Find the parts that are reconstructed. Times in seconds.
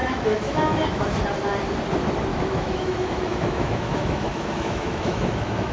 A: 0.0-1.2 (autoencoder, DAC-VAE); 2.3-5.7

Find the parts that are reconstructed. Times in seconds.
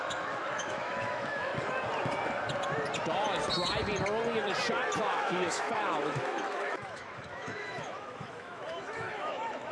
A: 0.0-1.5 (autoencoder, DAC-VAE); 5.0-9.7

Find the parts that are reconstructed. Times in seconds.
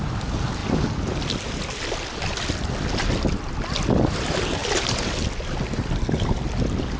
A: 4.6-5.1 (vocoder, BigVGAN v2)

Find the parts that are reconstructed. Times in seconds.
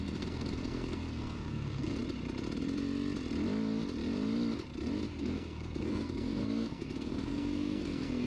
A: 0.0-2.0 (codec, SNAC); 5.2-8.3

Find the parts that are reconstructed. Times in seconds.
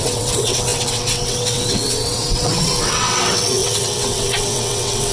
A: 0.0-5.1 (vocoder, WaveNeXt)